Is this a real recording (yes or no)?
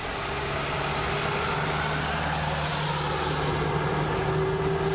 yes